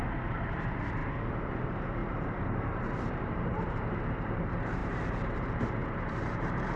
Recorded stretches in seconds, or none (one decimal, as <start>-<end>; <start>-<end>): 1.0-1.5